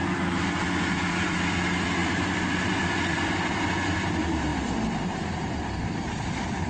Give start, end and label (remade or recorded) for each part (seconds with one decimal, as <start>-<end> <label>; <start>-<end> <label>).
0.0-2.0 recorded; 2.0-3.7 remade; 3.7-6.7 recorded